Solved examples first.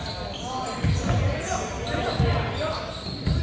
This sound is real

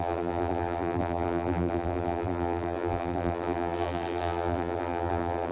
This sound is fake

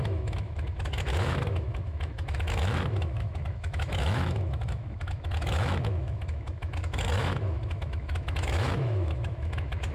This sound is fake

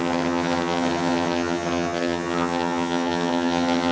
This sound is fake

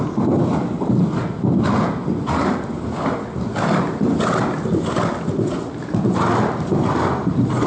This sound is real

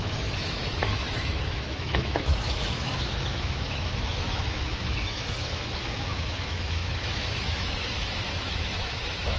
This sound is fake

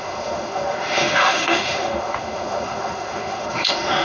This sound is fake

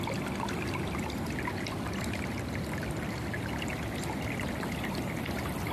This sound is real